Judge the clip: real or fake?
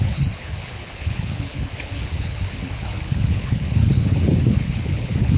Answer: fake